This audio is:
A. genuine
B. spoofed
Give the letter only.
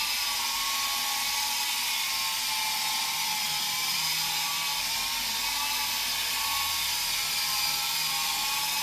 A